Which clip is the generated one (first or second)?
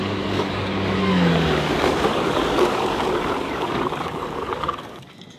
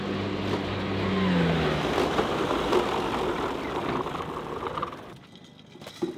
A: first